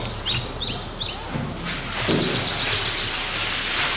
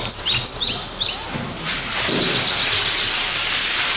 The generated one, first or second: second